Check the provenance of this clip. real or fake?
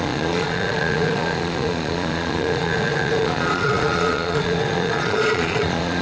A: fake